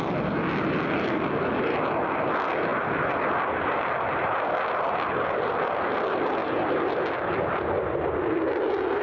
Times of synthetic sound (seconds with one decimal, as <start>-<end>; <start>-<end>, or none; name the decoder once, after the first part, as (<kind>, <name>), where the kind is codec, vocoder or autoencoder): none